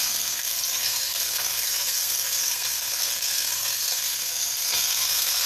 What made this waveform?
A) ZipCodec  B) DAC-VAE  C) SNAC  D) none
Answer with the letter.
C